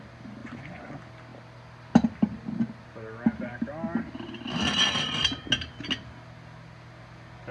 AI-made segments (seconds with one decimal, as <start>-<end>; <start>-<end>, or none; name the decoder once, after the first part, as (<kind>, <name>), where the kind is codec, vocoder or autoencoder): 0.4-0.9 (vocoder, Vocos)